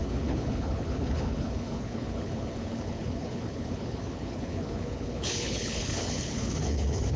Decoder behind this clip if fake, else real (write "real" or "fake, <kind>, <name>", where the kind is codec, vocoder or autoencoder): fake, codec, HILCodec